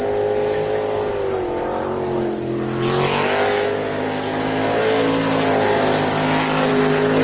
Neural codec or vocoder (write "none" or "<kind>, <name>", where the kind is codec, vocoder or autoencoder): none